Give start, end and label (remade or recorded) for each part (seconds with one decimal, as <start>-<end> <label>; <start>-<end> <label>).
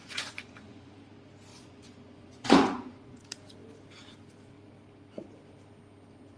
0.0-0.9 remade; 0.9-1.5 recorded; 1.5-3.2 remade; 3.2-6.4 recorded